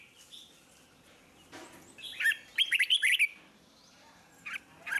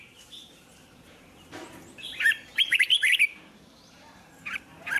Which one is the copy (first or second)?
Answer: second